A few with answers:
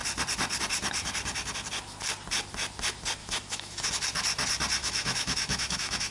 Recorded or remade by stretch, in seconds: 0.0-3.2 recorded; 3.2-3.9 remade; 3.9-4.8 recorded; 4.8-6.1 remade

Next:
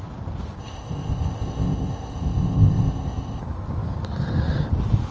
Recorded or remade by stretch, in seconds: 0.0-0.6 recorded; 0.6-3.4 remade; 3.4-5.1 recorded

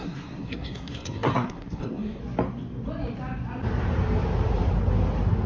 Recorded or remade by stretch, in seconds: 0.0-2.2 remade; 2.2-5.5 recorded

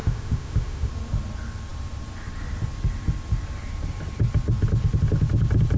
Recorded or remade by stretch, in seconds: 0.0-0.9 remade; 0.9-5.8 recorded

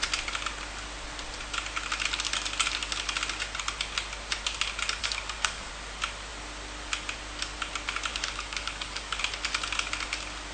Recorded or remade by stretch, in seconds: 0.0-5.0 recorded; 5.0-5.7 remade; 5.7-8.1 recorded; 8.1-9.2 remade; 9.2-10.5 recorded

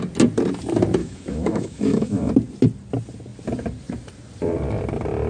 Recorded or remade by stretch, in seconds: 0.0-1.0 recorded; 1.0-2.3 remade; 2.3-5.3 recorded

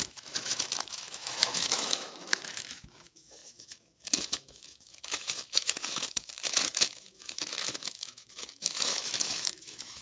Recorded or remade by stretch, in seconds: 0.0-10.0 remade